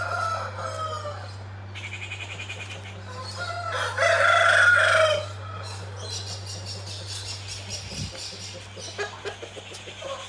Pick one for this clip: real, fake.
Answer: real